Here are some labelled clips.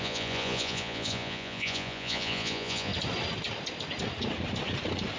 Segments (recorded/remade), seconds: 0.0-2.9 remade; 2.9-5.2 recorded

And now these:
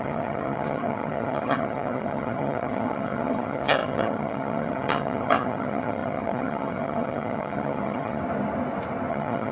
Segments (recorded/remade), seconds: 0.0-8.2 remade; 8.2-9.1 recorded; 9.1-9.5 remade

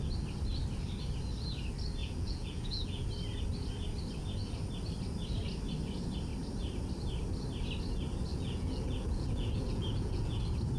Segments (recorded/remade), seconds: 0.0-2.0 recorded; 2.0-3.1 remade; 3.1-8.3 recorded; 8.3-10.4 remade; 10.4-10.8 recorded

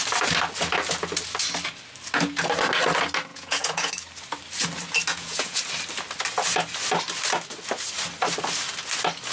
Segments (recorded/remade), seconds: 0.0-3.3 recorded; 3.3-3.9 remade; 3.9-5.1 recorded; 5.1-5.6 remade; 5.6-9.3 recorded

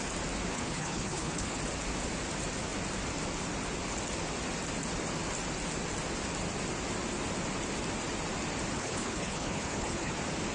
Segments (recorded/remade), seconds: 0.0-0.5 recorded; 0.5-1.6 remade; 1.6-8.7 recorded; 8.7-10.1 remade; 10.1-10.5 recorded

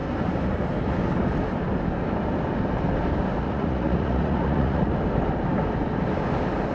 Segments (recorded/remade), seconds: 0.0-3.4 recorded; 3.4-4.9 remade; 4.9-6.7 recorded

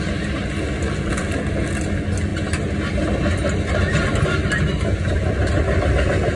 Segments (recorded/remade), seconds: 0.0-6.4 recorded